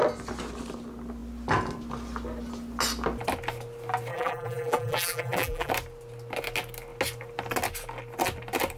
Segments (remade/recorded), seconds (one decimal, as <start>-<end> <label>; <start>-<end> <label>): 0.0-4.1 recorded; 4.1-5.7 remade; 5.7-8.8 recorded